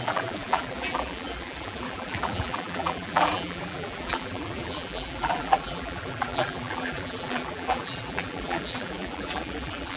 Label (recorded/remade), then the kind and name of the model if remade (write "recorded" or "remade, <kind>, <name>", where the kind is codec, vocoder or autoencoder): remade, vocoder, BigVGAN v2